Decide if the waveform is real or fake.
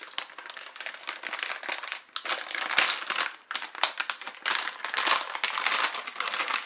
real